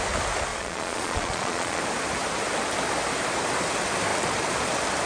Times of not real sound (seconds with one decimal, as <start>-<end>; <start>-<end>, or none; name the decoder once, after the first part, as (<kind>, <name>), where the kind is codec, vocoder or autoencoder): 0.5-1.8 (vocoder, Vocos)